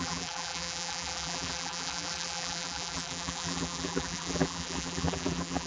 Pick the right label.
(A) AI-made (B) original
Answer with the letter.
A